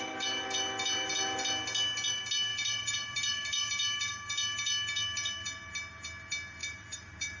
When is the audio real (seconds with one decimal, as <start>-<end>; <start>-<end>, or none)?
0.0-2.5; 3.7-6.6